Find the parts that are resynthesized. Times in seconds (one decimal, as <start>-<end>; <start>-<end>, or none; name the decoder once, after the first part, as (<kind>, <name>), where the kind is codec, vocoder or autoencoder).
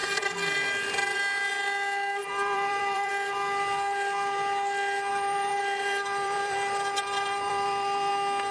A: 2.2-3.1 (vocoder, BigVGAN v2); 5.1-8.1